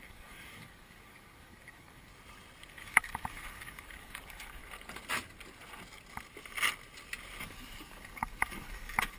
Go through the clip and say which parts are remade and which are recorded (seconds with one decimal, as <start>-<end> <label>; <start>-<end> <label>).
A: 0.0-2.1 remade; 2.1-2.7 recorded; 2.7-4.6 remade; 4.6-7.4 recorded; 7.4-9.2 remade